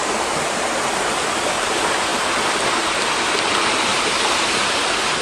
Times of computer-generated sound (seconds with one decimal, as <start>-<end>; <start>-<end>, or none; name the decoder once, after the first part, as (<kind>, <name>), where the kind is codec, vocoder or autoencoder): 3.9-5.2 (vocoder, BigVGAN v2)